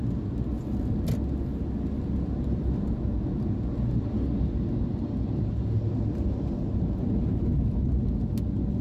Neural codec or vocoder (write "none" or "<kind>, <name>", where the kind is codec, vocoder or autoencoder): none